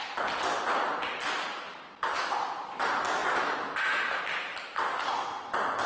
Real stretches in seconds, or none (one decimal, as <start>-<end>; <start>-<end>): 0.0-5.9

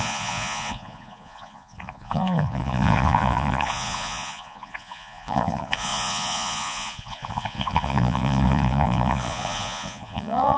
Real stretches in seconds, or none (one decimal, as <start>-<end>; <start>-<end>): none

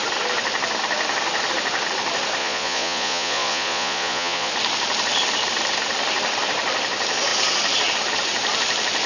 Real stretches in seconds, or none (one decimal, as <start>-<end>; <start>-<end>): 0.0-2.4; 4.5-9.1

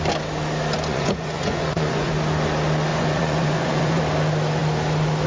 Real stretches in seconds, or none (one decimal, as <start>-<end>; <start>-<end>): 0.0-0.9; 2.1-2.9; 4.0-5.3

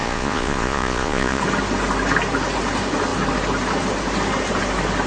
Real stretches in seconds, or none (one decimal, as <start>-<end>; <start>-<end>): 1.4-5.1

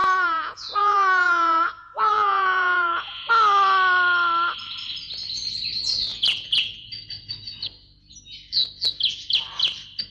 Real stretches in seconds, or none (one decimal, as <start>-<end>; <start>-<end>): 3.3-6.1; 6.9-10.1